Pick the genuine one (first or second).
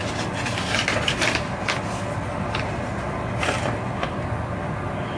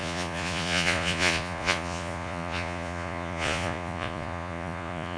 first